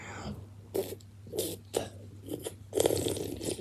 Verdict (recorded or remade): recorded